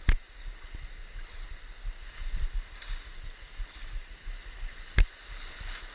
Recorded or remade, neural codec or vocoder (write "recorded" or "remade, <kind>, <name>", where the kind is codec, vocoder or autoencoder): recorded